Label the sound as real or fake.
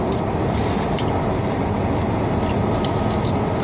real